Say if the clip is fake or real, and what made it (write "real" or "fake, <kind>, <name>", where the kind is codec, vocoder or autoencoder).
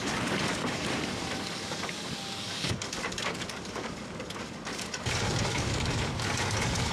fake, codec, DAC